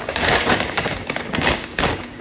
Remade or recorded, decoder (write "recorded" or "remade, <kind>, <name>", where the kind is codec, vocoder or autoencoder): remade, codec, DAC